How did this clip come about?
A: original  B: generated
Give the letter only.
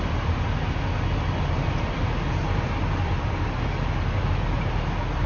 A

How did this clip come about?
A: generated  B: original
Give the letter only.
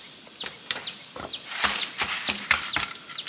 B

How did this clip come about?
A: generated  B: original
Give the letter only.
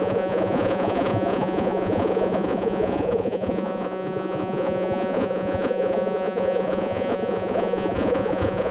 A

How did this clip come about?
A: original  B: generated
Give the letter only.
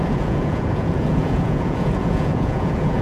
B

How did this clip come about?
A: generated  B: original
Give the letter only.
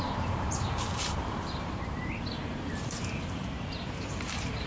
A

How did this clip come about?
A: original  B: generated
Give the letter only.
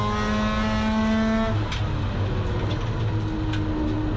A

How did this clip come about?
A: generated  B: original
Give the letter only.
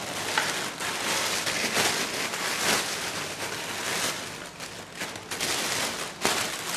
B